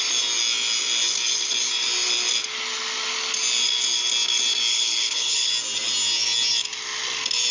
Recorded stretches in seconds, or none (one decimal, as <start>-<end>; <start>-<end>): 0.0-4.7; 5.5-7.5

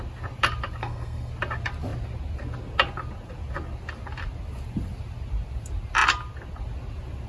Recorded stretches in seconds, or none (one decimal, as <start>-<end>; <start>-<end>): 0.0-0.8; 1.3-7.3

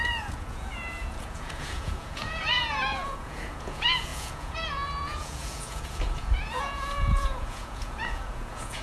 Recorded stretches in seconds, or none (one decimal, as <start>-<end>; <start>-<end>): none

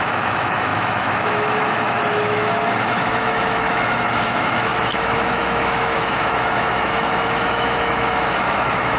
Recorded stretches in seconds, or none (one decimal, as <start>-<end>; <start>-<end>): none

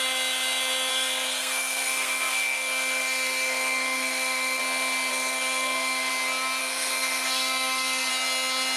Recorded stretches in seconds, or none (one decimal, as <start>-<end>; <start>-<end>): 0.0-0.9; 4.6-5.1; 6.1-6.6; 8.1-8.8